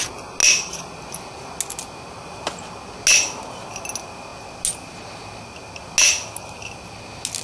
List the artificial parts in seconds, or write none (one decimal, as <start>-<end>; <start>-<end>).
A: none